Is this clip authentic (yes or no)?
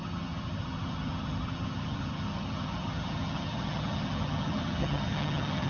no